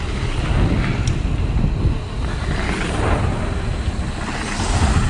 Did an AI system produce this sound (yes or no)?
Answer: no